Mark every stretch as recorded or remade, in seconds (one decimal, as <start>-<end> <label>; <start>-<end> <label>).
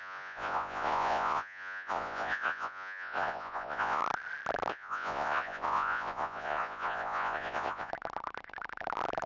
0.0-4.0 remade; 4.0-4.7 recorded; 4.7-7.9 remade; 7.9-9.3 recorded